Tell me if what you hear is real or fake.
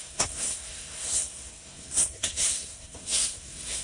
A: fake